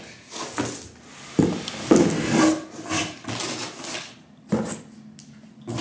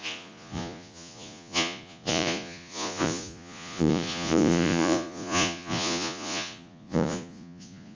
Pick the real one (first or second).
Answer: first